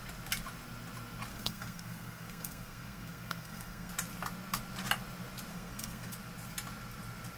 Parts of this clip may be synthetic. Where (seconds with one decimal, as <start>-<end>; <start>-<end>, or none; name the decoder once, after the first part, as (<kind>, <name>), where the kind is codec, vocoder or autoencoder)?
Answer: 1.3-3.9 (codec, SNAC); 5.5-6.1

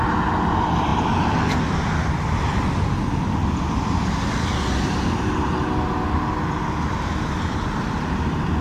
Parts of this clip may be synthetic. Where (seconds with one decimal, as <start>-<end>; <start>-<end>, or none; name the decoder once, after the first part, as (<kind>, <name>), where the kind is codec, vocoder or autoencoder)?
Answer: none